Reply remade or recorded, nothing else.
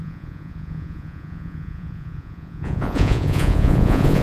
remade